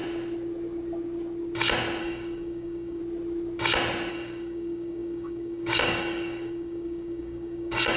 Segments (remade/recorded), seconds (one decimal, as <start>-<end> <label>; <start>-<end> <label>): 0.0-2.0 recorded; 2.0-3.0 remade; 3.0-4.1 recorded; 4.1-8.0 remade